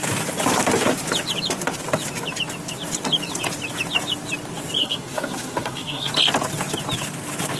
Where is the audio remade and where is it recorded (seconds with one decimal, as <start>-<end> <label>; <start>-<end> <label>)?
0.0-4.8 recorded; 4.8-6.1 remade; 6.1-7.6 recorded